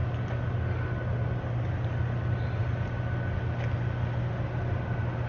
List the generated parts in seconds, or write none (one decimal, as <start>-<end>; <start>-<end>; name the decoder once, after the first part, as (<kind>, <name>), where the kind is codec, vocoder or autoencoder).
none

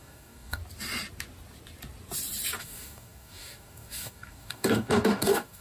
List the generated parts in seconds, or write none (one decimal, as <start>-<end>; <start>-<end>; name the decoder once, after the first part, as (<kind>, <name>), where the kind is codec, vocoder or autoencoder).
0.0-0.6 (codec, DAC); 2.6-5.6

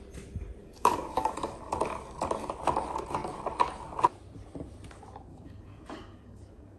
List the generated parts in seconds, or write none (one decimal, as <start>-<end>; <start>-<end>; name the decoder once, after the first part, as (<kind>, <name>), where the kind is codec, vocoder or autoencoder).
0.6-1.7 (codec, DAC); 5.3-6.8

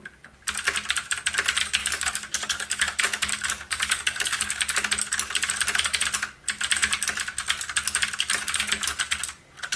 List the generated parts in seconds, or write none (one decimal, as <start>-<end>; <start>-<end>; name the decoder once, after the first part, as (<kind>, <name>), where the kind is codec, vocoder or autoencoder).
1.8-4.6 (codec, DAC)

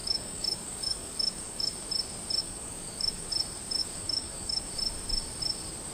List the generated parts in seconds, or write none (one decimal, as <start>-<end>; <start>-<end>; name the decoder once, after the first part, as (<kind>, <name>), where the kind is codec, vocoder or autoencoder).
0.0-1.7 (codec, DAC); 2.4-3.3; 3.8-4.7

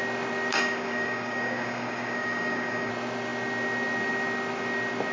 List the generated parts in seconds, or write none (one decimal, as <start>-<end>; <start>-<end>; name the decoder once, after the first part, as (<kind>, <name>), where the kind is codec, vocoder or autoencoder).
0.5-2.9 (codec, DAC)

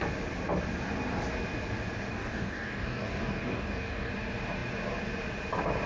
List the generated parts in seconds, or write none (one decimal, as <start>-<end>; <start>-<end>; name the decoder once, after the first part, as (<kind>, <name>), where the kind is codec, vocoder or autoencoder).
2.1-4.1 (codec, DAC)

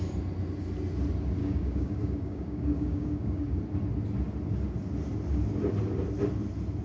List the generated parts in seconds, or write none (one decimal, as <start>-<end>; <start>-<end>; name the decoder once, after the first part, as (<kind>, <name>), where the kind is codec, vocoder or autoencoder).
1.4-3.6 (codec, DAC)